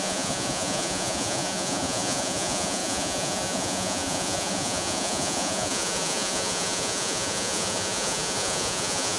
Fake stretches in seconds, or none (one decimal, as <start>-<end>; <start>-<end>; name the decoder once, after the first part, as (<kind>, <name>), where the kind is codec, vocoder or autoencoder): 0.0-9.2 (vocoder, Vocos)